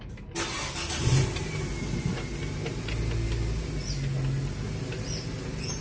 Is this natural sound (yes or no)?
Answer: yes